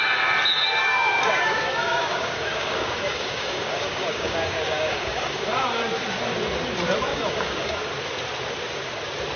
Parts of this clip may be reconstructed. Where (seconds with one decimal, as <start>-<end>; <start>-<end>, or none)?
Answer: 0.8-5.8; 7.1-7.9